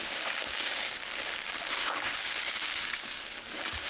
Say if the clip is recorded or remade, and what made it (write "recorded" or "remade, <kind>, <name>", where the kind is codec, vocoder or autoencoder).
remade, codec, DAC